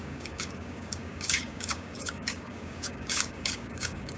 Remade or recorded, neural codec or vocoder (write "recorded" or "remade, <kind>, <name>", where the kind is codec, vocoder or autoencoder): remade, codec, DAC